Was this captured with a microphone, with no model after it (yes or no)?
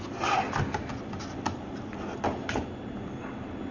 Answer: yes